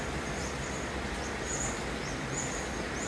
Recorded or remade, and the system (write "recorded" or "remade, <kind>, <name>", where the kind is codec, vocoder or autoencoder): recorded